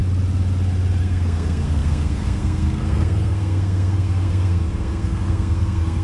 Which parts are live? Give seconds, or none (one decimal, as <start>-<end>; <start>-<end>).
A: 0.0-1.0